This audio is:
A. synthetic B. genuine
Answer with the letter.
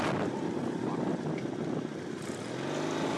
B